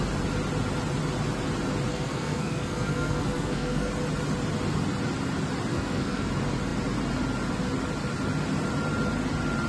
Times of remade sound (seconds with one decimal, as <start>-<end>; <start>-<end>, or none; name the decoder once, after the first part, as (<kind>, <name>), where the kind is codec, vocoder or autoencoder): 1.9-3.9 (codec, SNAC); 5.7-6.3